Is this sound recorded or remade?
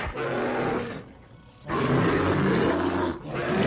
recorded